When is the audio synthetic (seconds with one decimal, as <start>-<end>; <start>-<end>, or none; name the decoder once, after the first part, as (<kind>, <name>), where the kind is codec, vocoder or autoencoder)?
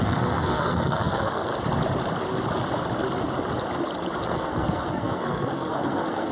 0.0-1.5 (codec, SNAC); 4.2-6.3